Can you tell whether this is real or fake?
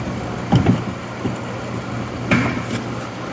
real